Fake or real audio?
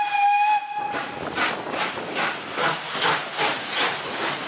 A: real